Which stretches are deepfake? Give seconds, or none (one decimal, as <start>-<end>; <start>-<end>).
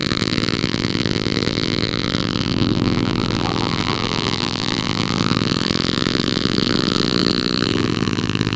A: 0.0-8.6